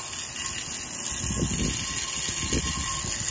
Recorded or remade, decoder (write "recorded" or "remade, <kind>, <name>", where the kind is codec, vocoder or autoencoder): recorded